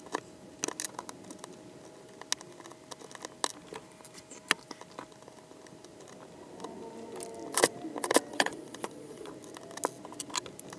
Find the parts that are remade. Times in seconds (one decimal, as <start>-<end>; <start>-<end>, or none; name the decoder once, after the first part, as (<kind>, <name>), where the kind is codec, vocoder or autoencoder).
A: 8.3-9.3 (vocoder, Vocos)